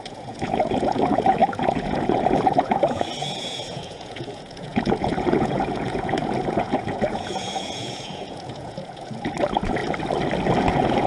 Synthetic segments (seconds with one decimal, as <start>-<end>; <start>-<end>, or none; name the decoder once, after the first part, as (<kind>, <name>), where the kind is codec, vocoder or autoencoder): 0.0-9.8 (vocoder, Vocos); 10.6-11.1